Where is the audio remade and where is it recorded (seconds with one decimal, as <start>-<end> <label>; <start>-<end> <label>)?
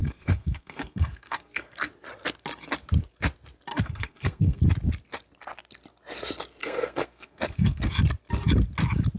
0.0-1.9 remade; 1.9-3.7 recorded; 3.7-4.6 remade; 4.6-6.6 recorded; 6.6-7.9 remade; 7.9-9.2 recorded